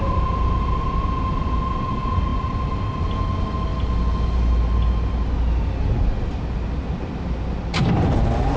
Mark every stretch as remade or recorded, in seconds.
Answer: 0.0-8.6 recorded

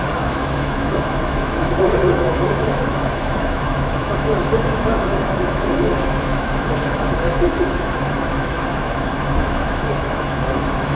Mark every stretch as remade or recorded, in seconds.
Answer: 0.0-10.9 remade

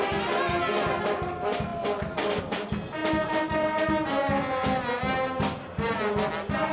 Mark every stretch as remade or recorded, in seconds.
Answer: 0.0-6.7 recorded

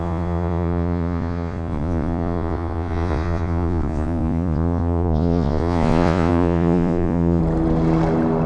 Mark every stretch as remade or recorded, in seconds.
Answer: 0.0-7.4 remade; 7.4-8.5 recorded

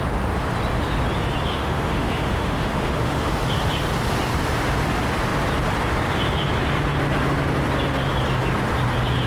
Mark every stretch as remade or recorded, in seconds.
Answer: 0.0-1.5 recorded; 1.5-3.3 remade; 3.3-9.3 recorded

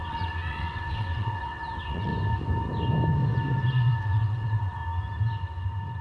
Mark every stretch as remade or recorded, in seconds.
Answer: 0.0-2.1 remade; 2.1-4.0 recorded; 4.0-4.8 remade; 4.8-6.0 recorded

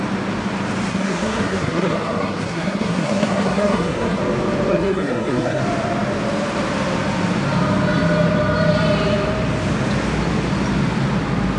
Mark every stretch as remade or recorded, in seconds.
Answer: 0.0-0.9 recorded; 0.9-4.2 remade; 4.2-4.7 recorded; 4.7-5.6 remade; 5.6-11.6 recorded

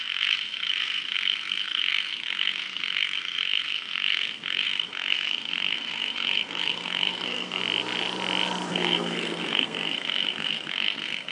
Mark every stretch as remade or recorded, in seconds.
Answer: 0.0-7.6 remade; 7.6-8.7 recorded; 8.7-11.3 remade